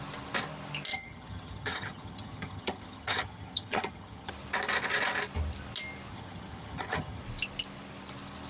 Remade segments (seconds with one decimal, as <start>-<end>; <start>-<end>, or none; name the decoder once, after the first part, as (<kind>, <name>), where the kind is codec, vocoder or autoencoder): 0.9-4.3 (vocoder, HiFi-GAN); 6.1-7.2

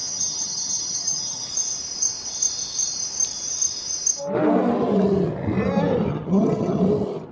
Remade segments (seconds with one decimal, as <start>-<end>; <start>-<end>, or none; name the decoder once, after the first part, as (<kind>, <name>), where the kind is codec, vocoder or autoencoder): 0.0-1.5 (vocoder, HiFi-GAN); 6.1-6.8

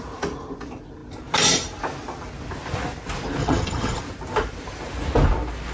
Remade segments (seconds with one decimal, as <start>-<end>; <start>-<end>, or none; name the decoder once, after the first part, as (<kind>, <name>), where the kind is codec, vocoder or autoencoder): 3.4-4.0 (vocoder, HiFi-GAN)